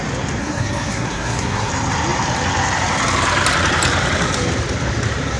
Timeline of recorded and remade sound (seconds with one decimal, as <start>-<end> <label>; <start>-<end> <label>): 0.0-0.4 recorded; 0.4-1.7 remade; 1.7-5.4 recorded